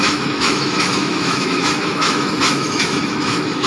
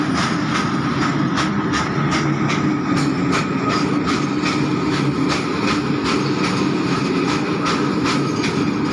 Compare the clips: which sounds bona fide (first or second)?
second